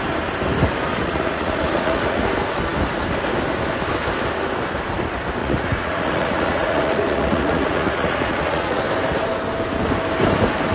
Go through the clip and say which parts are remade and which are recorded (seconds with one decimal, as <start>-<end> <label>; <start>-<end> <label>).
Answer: 0.0-0.9 recorded; 0.9-2.2 remade; 2.2-5.4 recorded; 5.4-8.8 remade; 8.8-10.7 recorded